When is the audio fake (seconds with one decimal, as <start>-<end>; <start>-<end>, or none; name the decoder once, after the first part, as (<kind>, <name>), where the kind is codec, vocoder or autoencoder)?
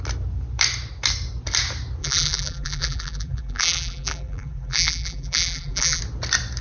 2.0-6.0 (vocoder, BigVGAN v2)